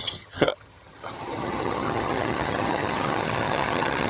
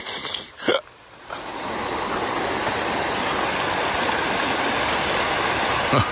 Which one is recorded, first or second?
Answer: second